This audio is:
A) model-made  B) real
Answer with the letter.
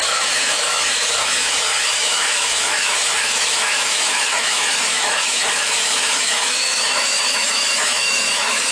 A